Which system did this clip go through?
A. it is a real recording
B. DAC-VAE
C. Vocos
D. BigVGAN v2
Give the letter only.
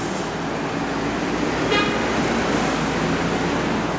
A